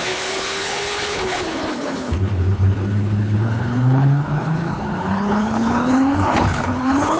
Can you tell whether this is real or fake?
fake